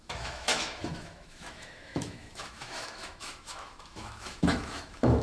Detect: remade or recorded remade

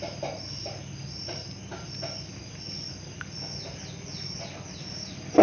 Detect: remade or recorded recorded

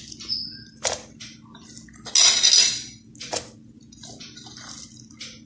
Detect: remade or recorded recorded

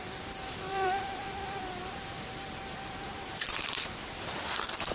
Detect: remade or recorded remade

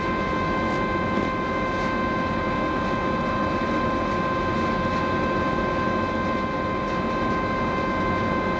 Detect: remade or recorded recorded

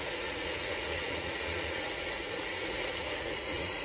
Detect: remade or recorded remade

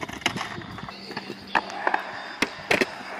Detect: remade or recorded recorded